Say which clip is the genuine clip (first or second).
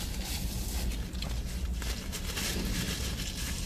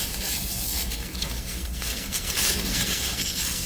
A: first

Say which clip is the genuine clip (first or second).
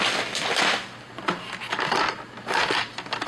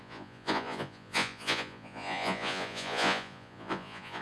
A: first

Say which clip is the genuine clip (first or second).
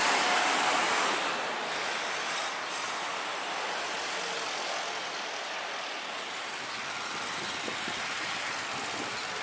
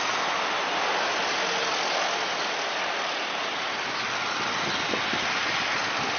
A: second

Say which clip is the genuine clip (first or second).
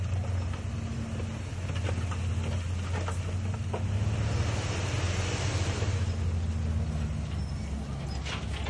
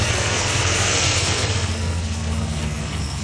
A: first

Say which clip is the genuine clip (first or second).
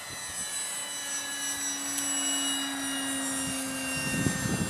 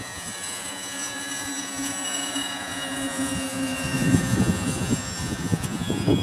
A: first